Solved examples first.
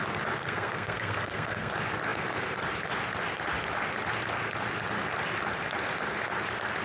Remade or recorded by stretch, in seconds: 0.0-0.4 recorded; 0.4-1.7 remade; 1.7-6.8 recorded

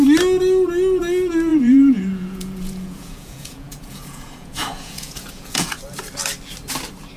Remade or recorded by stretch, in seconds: 0.0-1.5 recorded; 1.5-5.8 remade; 5.8-7.2 recorded

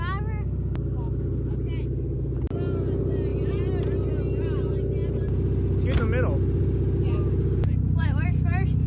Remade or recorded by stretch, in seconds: 0.0-8.9 recorded

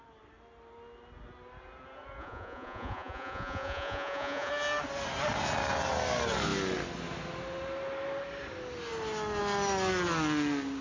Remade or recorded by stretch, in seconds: 0.0-2.2 recorded; 2.2-4.5 remade; 4.5-10.8 recorded